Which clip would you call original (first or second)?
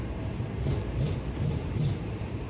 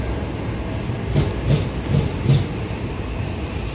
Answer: second